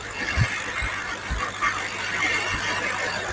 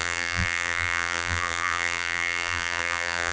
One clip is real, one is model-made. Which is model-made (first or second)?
second